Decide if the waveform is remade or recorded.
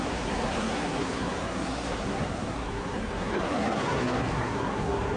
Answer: remade